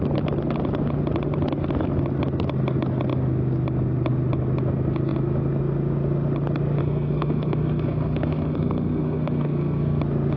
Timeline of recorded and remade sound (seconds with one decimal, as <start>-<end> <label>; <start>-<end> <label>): 0.0-6.8 recorded; 6.8-10.0 remade; 10.0-10.4 recorded